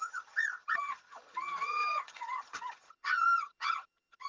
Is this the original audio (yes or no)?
no